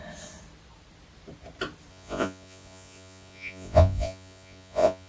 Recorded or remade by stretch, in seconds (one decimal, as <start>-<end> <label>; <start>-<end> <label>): 0.0-1.9 recorded; 1.9-5.1 remade